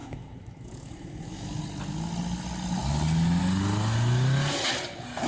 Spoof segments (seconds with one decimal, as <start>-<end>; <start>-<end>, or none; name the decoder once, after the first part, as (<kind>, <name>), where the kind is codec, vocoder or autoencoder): 0.0-1.6 (autoencoder, DAC-VAE)